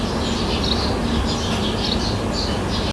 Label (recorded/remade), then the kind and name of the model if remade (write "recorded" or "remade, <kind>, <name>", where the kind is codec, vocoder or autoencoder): recorded